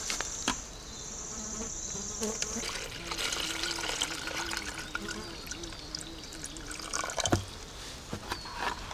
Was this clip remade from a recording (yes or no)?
no